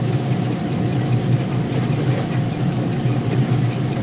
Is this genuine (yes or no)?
yes